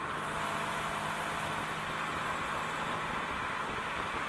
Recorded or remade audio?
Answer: recorded